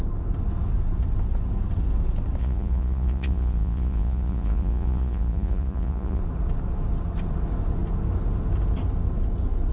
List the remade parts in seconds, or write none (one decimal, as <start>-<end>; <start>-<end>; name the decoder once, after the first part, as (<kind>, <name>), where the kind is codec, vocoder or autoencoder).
2.4-6.2 (vocoder, Vocos)